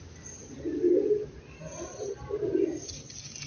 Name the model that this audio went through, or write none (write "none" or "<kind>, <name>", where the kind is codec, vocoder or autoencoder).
none